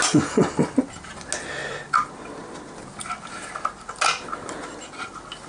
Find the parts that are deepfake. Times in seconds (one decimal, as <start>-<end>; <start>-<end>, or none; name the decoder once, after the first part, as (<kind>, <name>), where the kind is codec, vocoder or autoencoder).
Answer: none